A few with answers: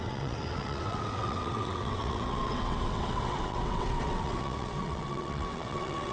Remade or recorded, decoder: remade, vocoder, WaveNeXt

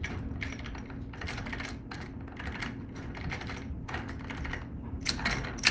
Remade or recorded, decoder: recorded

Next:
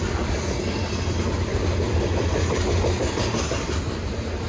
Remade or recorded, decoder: recorded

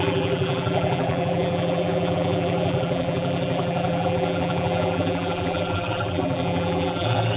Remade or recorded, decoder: remade, vocoder, BigVGAN v2